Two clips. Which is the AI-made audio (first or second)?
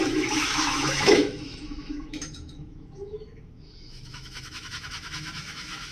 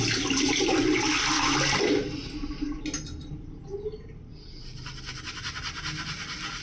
first